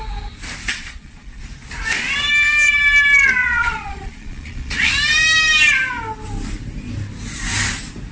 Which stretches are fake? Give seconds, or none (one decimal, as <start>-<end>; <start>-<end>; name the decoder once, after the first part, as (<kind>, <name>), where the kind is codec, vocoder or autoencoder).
0.7-1.4 (vocoder, Vocos); 3.4-4.9